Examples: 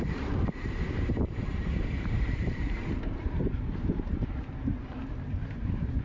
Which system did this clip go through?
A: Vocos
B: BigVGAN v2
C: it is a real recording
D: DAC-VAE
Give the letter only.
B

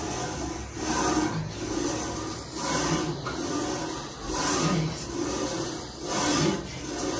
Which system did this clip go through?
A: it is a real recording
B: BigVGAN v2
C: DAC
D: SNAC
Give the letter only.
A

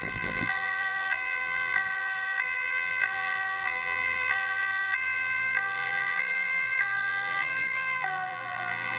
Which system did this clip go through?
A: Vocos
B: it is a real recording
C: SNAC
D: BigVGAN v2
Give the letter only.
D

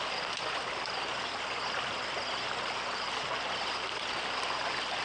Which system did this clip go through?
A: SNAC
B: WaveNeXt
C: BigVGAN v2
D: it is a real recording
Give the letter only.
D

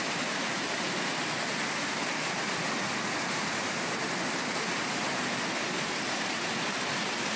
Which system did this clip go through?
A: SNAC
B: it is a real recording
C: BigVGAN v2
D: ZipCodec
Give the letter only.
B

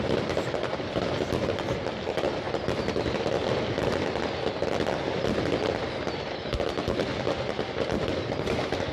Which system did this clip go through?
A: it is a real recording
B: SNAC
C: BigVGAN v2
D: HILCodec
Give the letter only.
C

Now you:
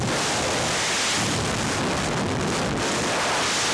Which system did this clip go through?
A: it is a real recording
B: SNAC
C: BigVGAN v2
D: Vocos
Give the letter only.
A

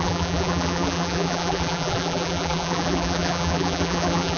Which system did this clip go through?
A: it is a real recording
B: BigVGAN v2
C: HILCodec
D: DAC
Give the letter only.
B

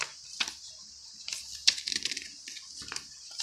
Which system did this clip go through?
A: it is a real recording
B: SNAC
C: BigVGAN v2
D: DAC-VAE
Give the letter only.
A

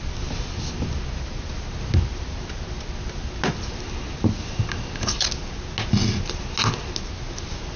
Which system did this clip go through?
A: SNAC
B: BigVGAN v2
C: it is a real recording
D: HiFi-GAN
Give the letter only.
C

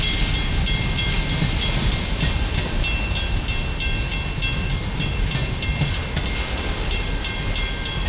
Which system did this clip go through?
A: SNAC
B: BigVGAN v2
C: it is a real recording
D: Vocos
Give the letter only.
C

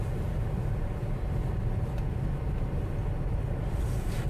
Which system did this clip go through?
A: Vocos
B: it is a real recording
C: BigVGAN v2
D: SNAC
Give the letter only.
B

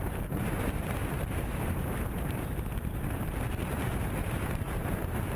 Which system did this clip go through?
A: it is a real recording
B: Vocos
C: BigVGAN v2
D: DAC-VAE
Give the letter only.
C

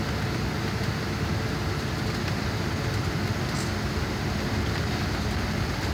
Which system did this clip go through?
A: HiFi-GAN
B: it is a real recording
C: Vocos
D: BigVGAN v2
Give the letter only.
B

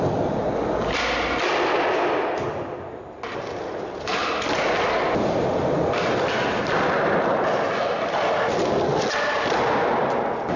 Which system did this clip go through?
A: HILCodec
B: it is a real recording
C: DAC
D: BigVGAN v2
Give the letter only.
B